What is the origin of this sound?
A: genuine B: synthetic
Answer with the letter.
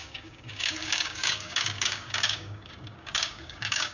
B